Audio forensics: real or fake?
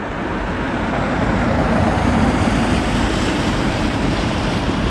fake